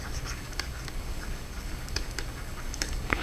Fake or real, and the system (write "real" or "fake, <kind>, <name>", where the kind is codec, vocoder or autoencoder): fake, codec, DAC